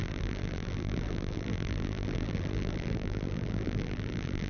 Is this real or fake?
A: fake